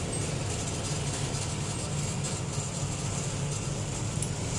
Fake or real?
real